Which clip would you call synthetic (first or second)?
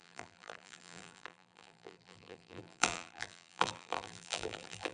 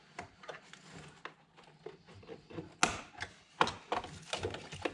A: first